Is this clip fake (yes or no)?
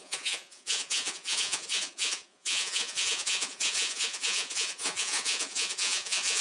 yes